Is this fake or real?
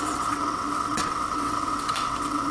fake